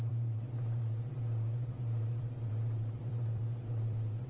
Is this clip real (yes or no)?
no